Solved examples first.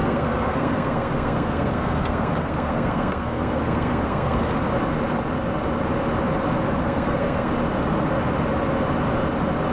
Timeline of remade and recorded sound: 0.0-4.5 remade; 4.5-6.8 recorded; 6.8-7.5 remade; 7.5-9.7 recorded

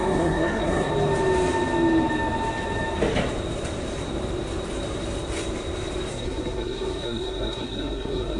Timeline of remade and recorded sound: 0.0-0.9 remade; 0.9-6.1 recorded; 6.1-8.4 remade